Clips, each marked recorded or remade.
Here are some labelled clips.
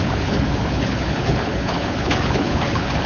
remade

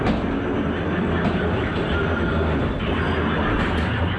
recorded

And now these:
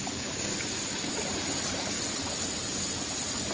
recorded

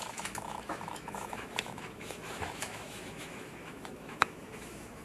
remade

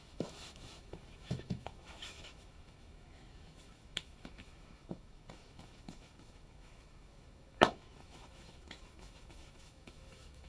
remade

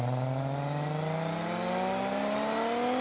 recorded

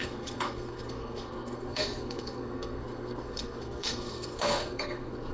remade